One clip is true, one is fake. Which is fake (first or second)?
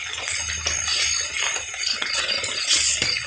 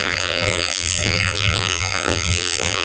second